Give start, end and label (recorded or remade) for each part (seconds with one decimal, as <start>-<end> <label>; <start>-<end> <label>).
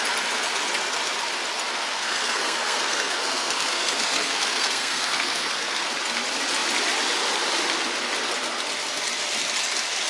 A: 0.0-1.7 recorded; 1.7-5.9 remade; 5.9-10.1 recorded